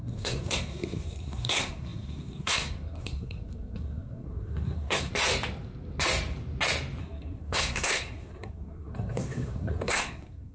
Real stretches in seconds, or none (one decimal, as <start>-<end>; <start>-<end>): 5.1-7.0